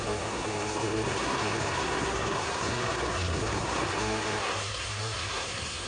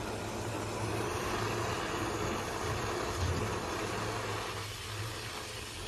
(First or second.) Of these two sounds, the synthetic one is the first